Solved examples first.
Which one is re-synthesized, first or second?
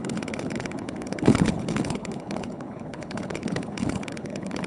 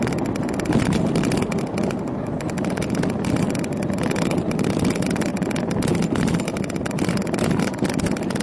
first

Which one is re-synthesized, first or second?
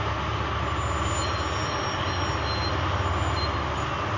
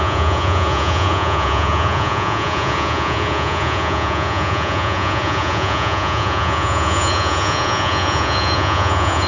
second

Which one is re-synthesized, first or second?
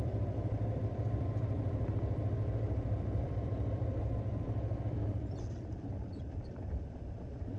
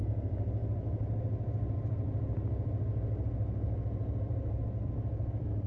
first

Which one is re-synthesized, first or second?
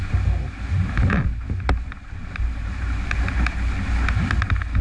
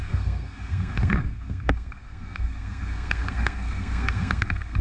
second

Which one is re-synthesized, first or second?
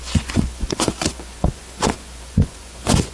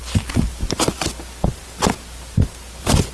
first